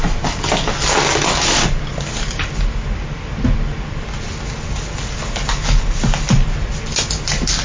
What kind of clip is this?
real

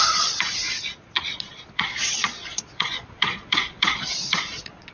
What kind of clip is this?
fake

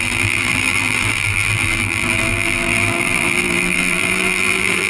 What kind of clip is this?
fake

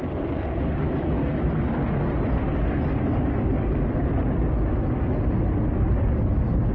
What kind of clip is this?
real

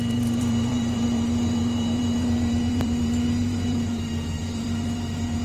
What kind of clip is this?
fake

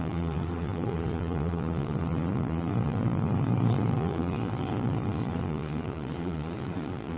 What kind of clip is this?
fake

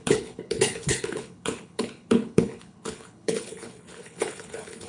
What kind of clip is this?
fake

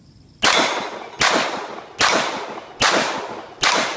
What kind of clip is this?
real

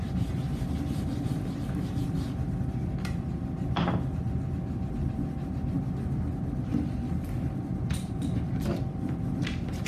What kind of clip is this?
real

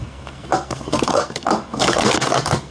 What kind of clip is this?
fake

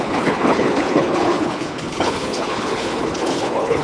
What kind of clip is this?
fake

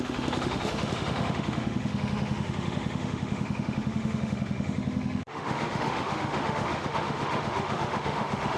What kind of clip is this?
fake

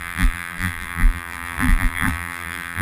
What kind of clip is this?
fake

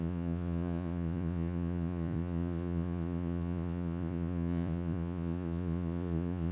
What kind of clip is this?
fake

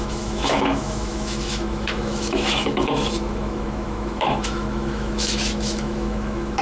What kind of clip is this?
fake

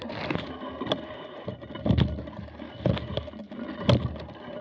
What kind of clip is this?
real